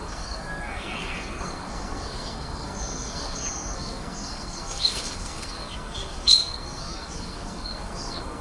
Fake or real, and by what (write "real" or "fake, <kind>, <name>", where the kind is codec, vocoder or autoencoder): fake, codec, SNAC